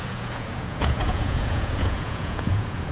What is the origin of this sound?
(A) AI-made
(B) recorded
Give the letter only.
A